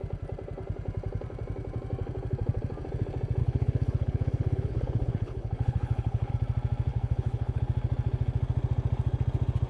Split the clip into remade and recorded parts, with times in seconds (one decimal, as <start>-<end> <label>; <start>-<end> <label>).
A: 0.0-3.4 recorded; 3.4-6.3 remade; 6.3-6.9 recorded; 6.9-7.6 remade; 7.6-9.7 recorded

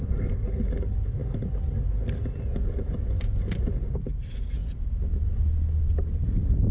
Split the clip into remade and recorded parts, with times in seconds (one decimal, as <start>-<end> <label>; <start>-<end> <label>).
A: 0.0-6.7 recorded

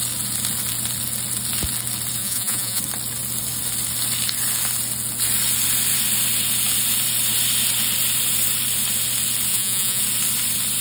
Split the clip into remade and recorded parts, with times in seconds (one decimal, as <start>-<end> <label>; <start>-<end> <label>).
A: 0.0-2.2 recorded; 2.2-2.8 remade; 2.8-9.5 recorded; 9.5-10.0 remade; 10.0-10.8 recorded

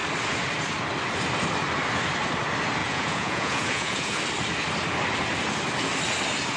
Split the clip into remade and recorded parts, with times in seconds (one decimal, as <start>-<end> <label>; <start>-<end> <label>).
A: 0.0-2.8 recorded; 2.8-4.2 remade; 4.2-6.6 recorded